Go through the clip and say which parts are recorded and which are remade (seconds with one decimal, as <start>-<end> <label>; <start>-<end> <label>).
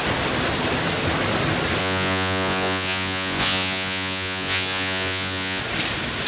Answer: 0.0-1.8 recorded; 1.8-5.6 remade; 5.6-6.3 recorded